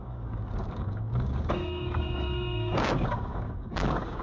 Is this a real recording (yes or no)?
no